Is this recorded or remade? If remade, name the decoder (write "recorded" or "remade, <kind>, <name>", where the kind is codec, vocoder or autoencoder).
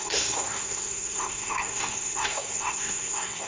remade, codec, SNAC